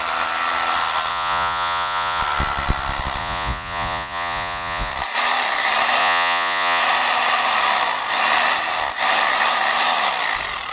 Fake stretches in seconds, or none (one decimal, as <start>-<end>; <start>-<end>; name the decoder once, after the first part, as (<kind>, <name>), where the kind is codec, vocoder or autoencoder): 1.1-2.2 (vocoder, Vocos); 3.2-4.9; 6.0-6.8